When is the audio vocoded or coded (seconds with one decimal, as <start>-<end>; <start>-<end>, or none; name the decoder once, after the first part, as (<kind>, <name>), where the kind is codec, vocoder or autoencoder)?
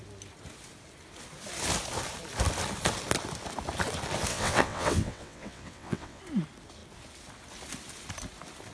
4.3-6.2 (vocoder, WaveNeXt)